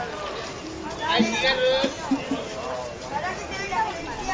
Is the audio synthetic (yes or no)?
no